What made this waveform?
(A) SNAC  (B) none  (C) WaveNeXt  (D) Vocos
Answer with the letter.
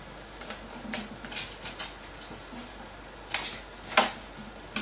B